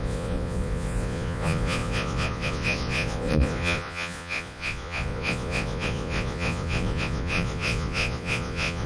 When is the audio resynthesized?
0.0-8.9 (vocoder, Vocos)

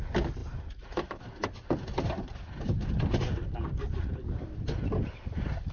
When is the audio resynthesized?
none